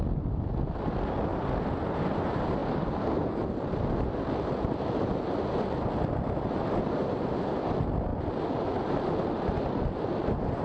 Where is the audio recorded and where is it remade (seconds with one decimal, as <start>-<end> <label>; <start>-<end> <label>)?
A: 0.0-10.6 recorded